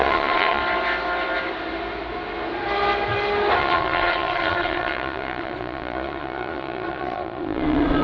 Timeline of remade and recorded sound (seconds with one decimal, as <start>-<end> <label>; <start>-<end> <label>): 0.0-0.6 remade; 0.6-3.6 recorded; 3.6-8.0 remade